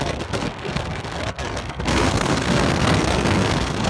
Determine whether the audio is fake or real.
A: fake